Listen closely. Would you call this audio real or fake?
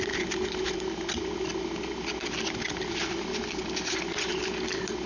real